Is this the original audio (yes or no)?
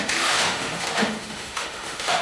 no